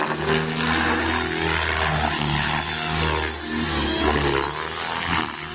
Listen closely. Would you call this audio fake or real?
real